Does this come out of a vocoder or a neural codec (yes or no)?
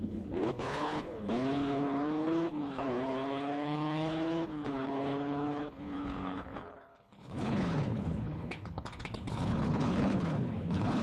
yes